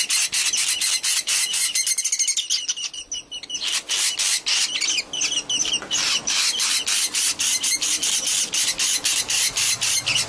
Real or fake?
real